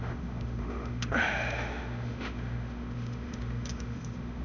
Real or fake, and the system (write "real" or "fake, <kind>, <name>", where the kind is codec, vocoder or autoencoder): fake, autoencoder, DAC-VAE